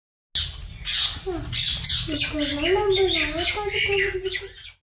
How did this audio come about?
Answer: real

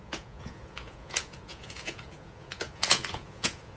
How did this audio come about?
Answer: fake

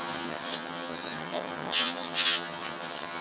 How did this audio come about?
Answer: fake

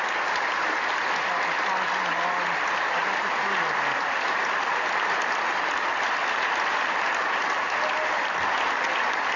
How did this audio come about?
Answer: real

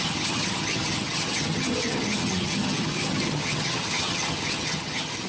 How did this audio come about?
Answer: fake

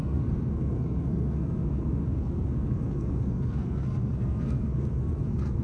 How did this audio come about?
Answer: fake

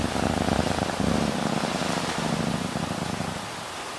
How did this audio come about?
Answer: real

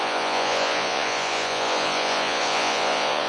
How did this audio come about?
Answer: fake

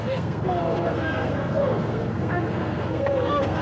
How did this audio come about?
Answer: fake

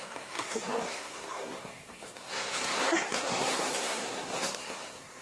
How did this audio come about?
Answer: fake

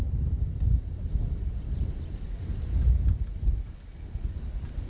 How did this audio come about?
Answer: real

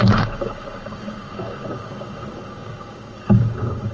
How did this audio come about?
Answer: fake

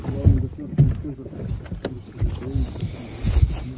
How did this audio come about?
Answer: real